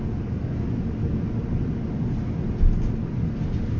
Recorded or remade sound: recorded